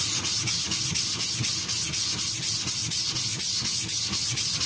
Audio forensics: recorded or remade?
recorded